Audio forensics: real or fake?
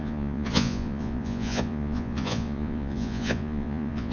fake